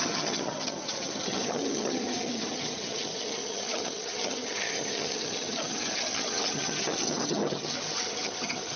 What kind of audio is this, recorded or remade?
remade